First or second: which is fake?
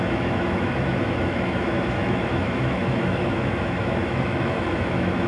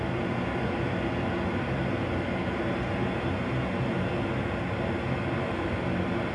first